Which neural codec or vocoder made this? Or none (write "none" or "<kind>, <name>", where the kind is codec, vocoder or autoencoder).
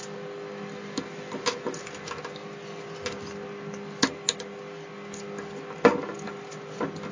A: none